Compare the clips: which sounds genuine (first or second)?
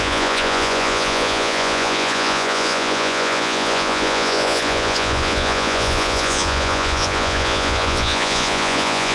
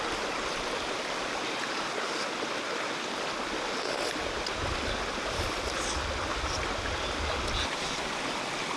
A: second